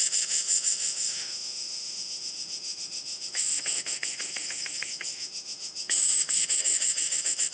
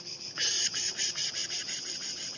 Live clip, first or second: second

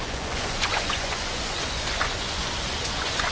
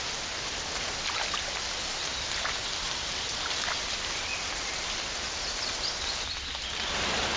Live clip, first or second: second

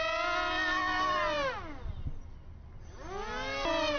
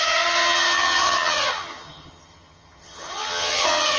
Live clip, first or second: first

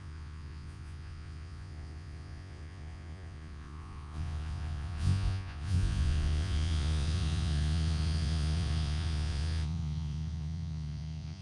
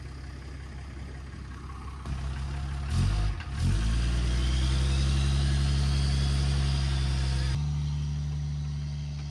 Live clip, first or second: second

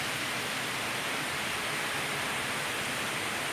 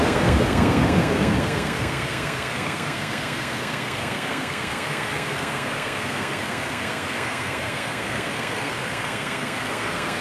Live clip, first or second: first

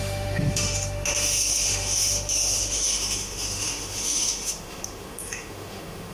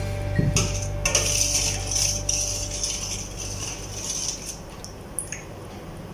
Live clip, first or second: second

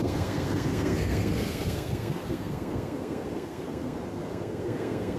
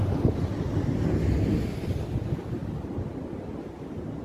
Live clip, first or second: second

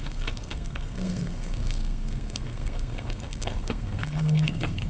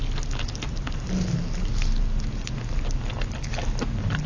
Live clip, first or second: second